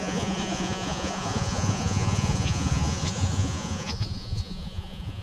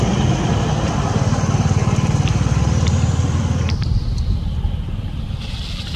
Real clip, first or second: second